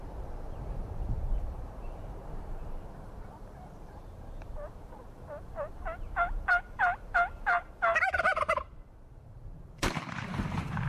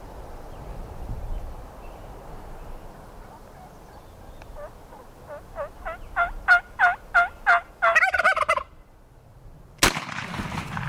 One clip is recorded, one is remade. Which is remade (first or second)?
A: first